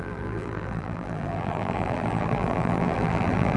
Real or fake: fake